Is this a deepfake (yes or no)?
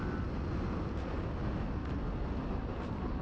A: no